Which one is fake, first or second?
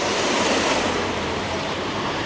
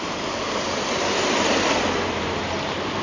first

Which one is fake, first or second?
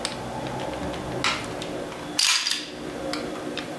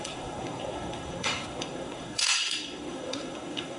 second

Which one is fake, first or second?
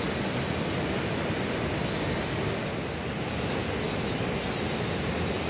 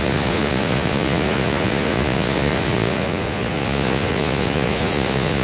second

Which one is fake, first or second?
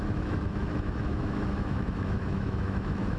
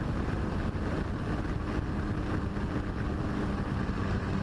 first